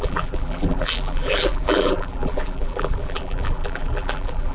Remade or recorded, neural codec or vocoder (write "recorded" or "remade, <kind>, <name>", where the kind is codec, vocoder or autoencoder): remade, vocoder, BigVGAN v2